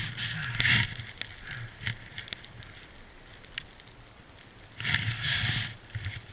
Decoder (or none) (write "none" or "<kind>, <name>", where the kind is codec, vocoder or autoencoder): none